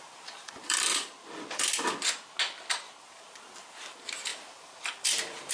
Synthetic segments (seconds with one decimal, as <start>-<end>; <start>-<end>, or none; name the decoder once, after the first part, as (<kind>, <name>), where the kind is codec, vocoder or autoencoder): 0.0-0.9 (vocoder, BigVGAN v2); 3.0-5.5